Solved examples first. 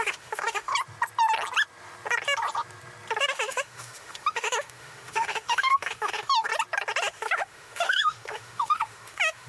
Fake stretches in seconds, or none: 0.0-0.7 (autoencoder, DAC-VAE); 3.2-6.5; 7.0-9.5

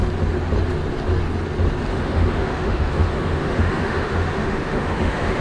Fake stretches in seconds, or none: 1.9-5.4 (autoencoder, DAC-VAE)

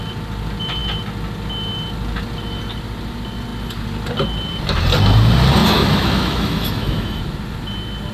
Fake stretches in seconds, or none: 5.6-7.2 (autoencoder, DAC-VAE)